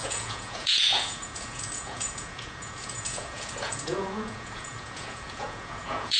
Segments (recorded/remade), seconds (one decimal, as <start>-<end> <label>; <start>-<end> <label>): 0.0-6.2 remade